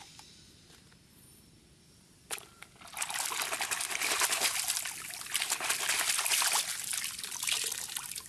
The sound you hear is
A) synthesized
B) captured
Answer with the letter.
B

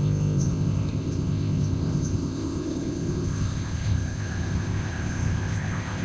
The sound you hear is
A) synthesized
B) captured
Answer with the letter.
A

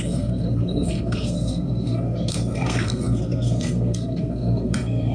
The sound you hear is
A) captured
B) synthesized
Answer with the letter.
B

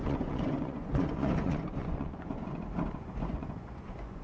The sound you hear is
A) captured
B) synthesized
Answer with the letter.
B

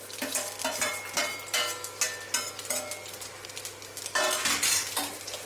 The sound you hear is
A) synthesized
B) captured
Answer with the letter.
B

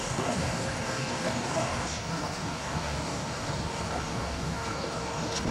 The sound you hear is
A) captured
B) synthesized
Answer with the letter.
B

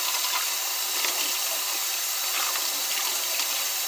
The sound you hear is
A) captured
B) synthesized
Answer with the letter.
A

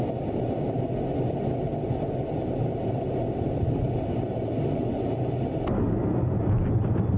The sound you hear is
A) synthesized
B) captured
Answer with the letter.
B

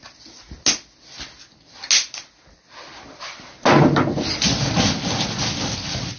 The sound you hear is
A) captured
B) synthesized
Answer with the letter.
A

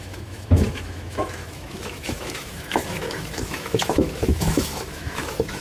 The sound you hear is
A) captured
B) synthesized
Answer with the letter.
B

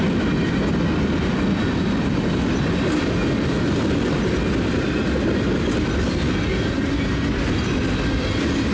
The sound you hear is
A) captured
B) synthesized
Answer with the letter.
A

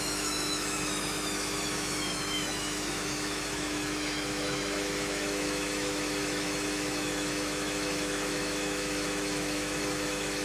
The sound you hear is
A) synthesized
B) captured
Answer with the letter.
A